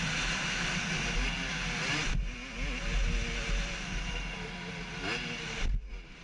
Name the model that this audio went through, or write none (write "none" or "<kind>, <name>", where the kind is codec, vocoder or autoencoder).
none